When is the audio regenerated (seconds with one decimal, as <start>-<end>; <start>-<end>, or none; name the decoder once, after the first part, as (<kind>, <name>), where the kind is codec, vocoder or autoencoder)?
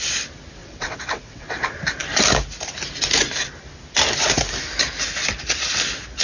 0.6-1.6 (vocoder, WaveNeXt)